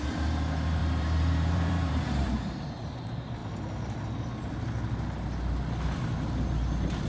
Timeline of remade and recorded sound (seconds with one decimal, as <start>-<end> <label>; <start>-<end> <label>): 0.0-3.4 remade; 3.4-7.1 recorded